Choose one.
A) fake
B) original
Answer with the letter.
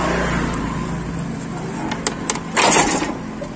B